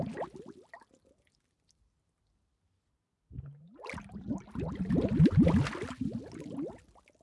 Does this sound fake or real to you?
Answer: real